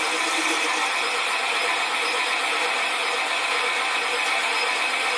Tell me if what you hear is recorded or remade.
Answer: remade